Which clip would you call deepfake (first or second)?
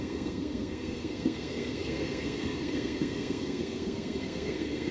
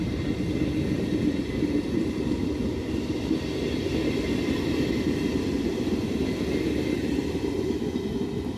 first